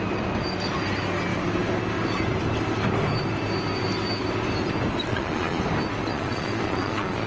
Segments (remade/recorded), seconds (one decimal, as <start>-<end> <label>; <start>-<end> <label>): 0.0-5.1 recorded; 5.1-5.6 remade; 5.6-6.1 recorded; 6.1-7.3 remade